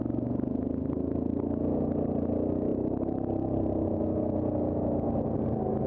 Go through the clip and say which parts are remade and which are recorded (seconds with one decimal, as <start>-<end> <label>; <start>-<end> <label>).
0.0-2.7 recorded; 2.7-4.0 remade; 4.0-5.9 recorded

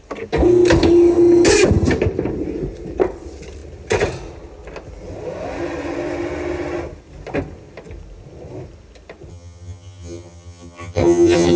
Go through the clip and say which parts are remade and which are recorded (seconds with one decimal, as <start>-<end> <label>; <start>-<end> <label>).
0.0-9.3 recorded; 9.3-11.6 remade

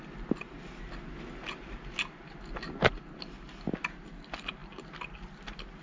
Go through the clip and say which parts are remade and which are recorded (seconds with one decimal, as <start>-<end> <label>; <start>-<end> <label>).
0.0-5.8 recorded

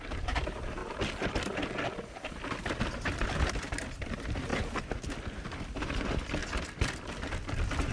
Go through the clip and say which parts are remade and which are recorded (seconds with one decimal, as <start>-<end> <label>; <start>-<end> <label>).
0.0-0.8 remade; 0.8-1.9 recorded; 1.9-6.4 remade; 6.4-7.2 recorded; 7.2-7.9 remade